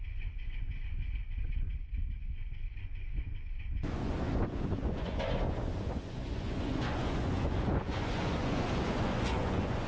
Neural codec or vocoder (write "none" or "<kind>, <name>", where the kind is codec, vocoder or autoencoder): vocoder, Vocos